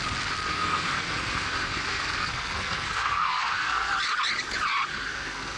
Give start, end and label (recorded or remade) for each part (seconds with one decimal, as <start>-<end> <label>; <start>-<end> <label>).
0.0-0.5 recorded; 0.5-3.9 remade; 3.9-4.9 recorded; 4.9-5.6 remade